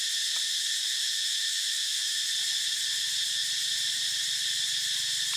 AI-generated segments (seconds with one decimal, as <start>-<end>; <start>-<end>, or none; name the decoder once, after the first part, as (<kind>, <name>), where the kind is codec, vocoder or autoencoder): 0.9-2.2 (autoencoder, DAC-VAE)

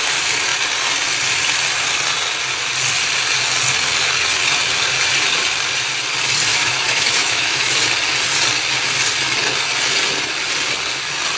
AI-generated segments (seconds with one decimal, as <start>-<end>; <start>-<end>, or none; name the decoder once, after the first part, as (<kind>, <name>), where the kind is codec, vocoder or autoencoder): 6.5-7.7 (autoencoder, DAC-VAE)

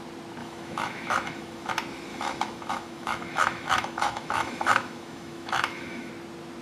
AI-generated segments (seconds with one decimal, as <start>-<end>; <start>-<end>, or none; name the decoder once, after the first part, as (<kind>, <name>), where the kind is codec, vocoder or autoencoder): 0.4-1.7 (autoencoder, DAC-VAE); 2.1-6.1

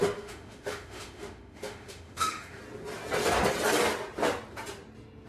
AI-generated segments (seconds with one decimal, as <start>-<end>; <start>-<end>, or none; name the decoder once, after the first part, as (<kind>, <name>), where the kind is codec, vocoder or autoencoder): 0.0-2.6 (autoencoder, DAC-VAE)

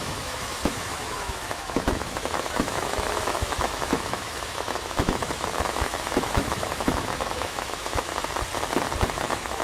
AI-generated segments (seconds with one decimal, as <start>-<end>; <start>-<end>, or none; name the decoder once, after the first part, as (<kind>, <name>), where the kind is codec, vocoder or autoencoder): 0.0-8.1 (autoencoder, DAC-VAE); 9.0-9.6

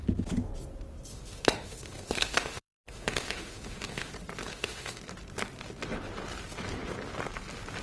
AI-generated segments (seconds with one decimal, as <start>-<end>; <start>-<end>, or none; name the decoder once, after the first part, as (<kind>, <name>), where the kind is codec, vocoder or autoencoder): 1.1-4.1 (autoencoder, DAC-VAE); 4.5-5.0